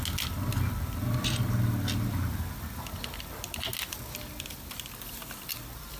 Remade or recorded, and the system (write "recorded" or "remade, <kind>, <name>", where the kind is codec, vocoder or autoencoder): recorded